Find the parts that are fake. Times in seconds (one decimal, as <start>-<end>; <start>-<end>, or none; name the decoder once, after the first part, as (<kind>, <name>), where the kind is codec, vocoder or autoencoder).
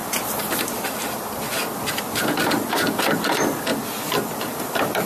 0.0-3.7 (vocoder, BigVGAN v2); 4.2-5.1